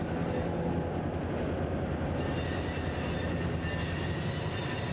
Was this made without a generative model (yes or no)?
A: yes